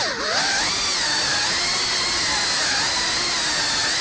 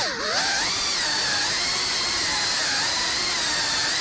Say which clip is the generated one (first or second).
second